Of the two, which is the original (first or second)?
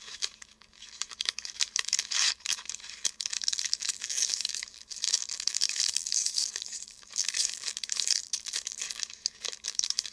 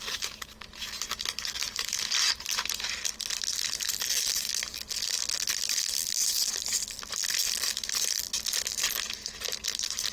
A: second